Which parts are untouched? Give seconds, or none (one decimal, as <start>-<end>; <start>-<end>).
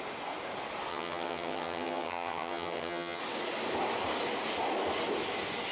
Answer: 0.0-0.9; 3.2-5.7